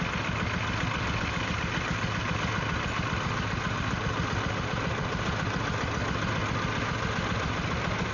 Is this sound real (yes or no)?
yes